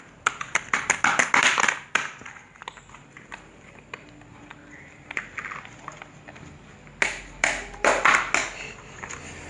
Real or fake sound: real